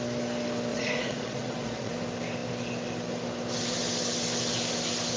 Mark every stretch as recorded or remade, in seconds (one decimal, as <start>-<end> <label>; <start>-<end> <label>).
0.0-0.7 recorded; 0.7-1.9 remade; 1.9-5.2 recorded